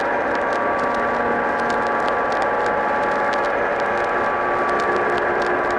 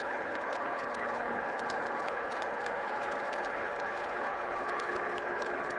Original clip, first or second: first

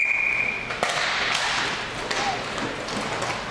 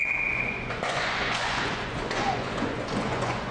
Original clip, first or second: first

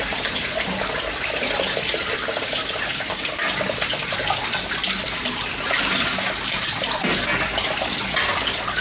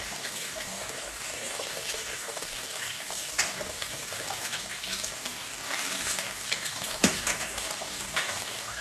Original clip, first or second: first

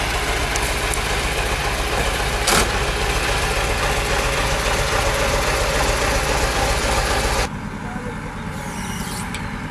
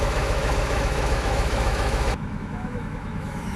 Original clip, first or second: first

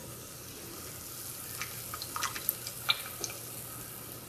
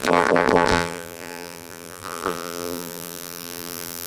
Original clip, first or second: first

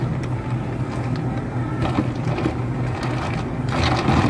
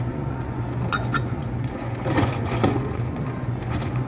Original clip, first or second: first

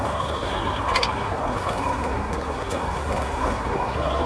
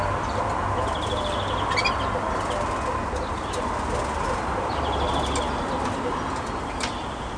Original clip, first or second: second